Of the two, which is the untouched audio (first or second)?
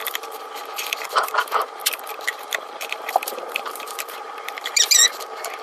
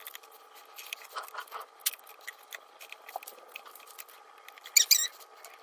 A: second